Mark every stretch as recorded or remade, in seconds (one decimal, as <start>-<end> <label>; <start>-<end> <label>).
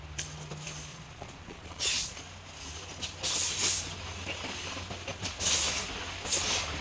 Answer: 0.0-0.9 recorded; 0.9-2.2 remade; 2.2-6.8 recorded